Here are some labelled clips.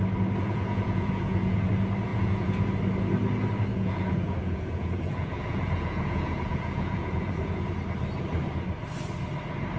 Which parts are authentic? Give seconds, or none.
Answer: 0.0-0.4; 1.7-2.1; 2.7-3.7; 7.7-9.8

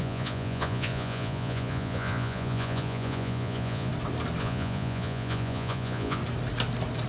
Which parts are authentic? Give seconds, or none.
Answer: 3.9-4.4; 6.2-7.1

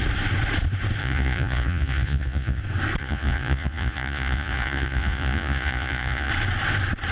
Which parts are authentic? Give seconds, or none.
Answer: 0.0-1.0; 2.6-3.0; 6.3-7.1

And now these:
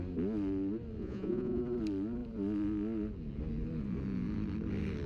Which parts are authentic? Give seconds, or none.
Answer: 0.0-1.0; 1.6-5.1

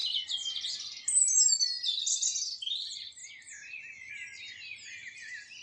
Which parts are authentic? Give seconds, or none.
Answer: 0.0-5.6

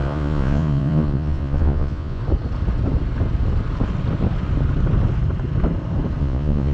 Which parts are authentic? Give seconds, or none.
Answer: 2.2-6.2